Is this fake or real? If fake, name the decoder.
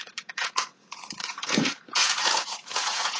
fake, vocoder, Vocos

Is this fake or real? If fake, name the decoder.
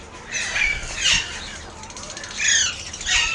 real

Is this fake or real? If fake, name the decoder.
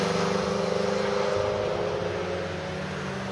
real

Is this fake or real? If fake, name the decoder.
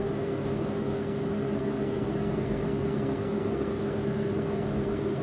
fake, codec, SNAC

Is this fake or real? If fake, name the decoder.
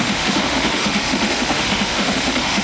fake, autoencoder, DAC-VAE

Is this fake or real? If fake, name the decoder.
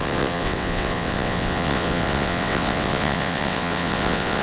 fake, vocoder, WaveNeXt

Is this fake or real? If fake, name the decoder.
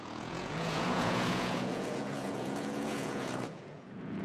fake, vocoder, Vocos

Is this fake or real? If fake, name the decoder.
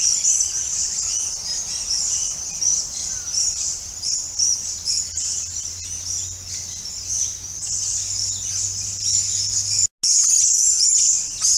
real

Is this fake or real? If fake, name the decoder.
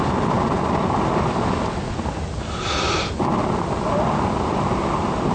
real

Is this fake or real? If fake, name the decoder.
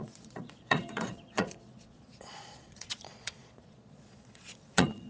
fake, vocoder, Vocos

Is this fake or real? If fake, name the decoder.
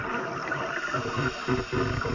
real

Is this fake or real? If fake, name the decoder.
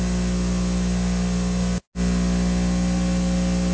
real